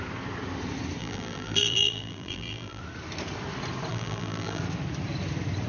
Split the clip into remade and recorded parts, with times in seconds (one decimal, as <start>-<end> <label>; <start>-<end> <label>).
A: 0.0-1.0 recorded; 1.0-2.8 remade; 2.8-3.9 recorded; 3.9-4.6 remade; 4.6-5.7 recorded